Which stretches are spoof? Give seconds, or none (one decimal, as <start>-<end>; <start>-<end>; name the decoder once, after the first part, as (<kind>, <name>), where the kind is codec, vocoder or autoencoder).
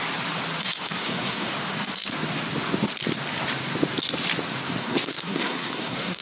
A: 0.6-1.5 (codec, SNAC); 4.8-6.2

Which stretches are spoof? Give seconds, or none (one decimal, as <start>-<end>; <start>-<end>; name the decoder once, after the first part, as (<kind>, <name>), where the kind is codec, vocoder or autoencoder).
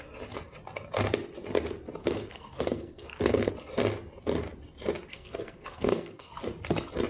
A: 2.0-3.5 (codec, SNAC); 5.1-6.3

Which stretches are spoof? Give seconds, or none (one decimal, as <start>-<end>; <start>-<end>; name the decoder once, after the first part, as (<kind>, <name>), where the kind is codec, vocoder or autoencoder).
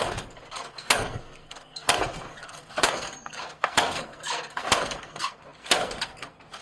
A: 0.0-6.6 (codec, SNAC)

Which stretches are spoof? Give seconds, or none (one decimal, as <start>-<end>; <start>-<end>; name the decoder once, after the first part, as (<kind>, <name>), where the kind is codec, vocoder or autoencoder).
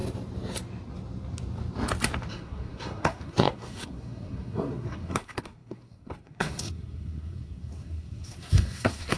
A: 2.3-9.2 (codec, SNAC)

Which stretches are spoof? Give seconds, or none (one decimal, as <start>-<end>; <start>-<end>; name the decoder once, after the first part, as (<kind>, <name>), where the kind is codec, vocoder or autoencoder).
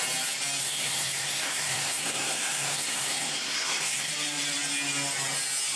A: 0.6-4.1 (codec, SNAC)